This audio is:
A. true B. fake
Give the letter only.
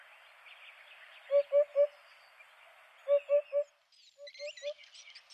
A